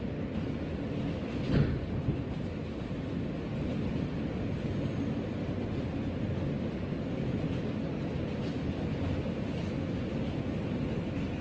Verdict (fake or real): real